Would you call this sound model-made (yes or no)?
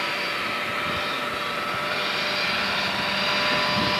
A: no